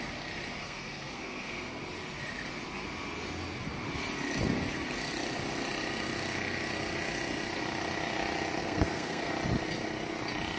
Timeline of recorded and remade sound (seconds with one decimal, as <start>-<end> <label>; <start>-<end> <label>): 0.0-0.6 recorded; 0.6-1.8 remade; 1.8-8.6 recorded; 8.6-9.3 remade; 9.3-10.6 recorded